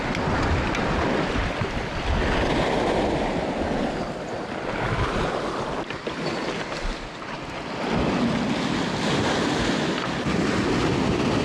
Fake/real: real